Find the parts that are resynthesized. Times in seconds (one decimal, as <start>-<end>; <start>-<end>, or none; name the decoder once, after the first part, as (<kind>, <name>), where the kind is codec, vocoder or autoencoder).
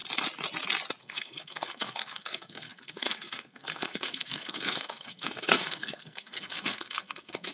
1.0-7.5 (codec, SNAC)